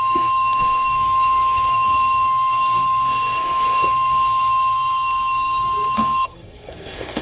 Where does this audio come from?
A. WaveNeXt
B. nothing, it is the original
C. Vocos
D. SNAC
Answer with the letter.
D